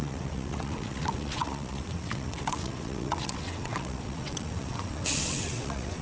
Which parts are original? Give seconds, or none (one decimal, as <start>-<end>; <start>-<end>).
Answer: none